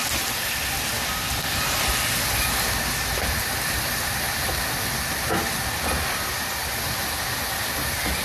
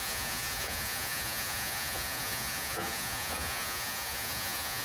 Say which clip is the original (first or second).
first